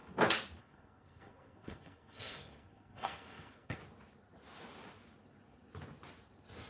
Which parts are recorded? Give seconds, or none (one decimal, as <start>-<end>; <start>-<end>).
0.0-0.6; 3.8-6.7